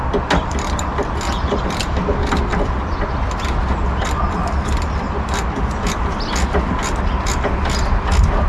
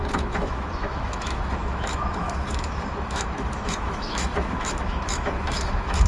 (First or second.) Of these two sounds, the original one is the first